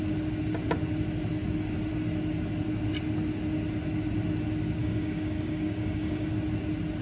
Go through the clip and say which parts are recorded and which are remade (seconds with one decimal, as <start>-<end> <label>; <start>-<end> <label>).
0.0-4.8 recorded; 4.8-6.3 remade; 6.3-7.0 recorded